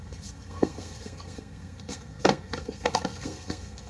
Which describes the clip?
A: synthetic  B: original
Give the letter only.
A